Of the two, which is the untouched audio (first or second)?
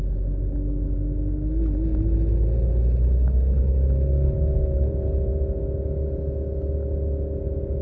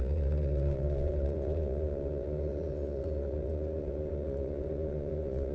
first